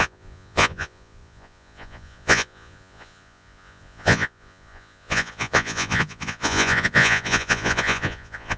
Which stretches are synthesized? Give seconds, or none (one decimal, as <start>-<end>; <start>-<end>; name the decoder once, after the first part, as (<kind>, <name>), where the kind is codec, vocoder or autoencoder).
0.0-8.6 (vocoder, Vocos)